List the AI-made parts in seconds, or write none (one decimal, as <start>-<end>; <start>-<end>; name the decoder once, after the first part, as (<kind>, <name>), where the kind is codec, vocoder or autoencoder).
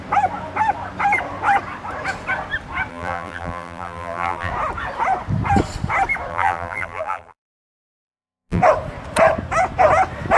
2.9-4.5 (vocoder, BigVGAN v2); 6.3-8.6